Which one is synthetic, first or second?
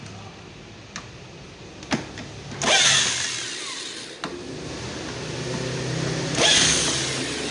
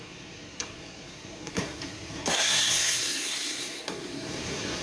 second